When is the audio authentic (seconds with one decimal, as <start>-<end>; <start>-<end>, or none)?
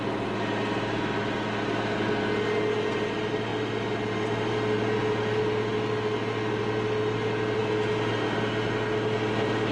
0.0-9.7